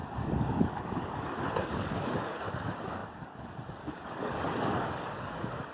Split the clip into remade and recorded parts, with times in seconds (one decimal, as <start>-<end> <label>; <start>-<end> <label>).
0.0-5.7 remade